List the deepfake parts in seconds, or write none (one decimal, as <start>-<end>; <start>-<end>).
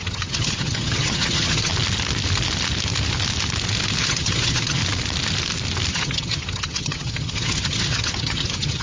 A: 0.0-1.7; 4.0-4.8; 5.9-8.8